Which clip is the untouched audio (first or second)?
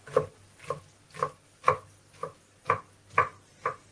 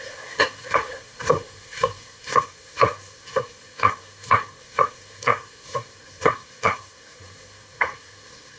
first